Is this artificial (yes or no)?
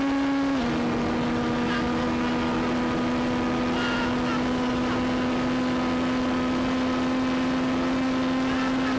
no